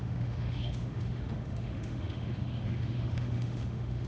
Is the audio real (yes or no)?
no